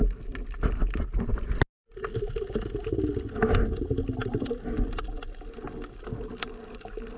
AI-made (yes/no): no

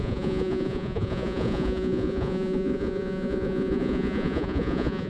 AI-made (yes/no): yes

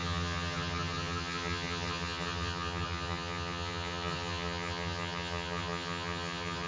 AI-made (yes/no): yes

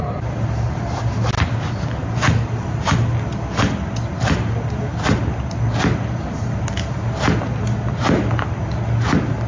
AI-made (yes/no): no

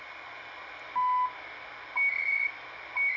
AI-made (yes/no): no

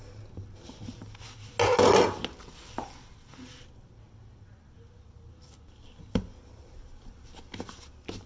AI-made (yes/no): no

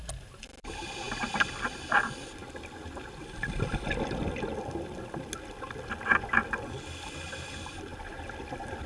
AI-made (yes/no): no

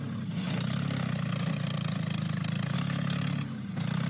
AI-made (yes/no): no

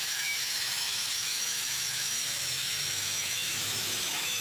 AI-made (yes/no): yes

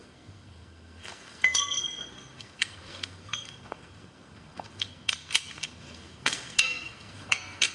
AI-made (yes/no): yes